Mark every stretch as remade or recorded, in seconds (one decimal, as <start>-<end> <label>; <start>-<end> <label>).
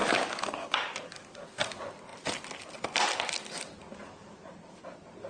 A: 0.0-1.5 remade; 1.5-5.3 recorded